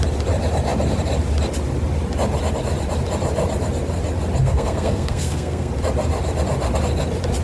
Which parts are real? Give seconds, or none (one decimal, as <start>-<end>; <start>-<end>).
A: 0.0-4.4; 5.7-7.4